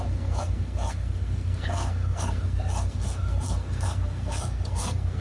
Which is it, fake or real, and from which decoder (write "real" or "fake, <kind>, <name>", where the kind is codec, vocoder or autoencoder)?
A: fake, codec, SNAC